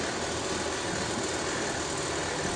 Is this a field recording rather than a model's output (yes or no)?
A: yes